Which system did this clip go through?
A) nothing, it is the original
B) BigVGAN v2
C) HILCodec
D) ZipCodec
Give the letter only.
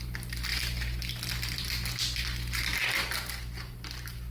A